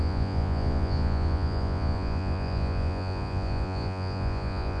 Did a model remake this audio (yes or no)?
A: yes